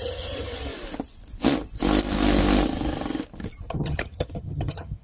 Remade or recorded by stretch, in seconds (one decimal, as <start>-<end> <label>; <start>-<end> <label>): 0.0-0.7 remade; 0.7-3.7 recorded; 3.7-5.0 remade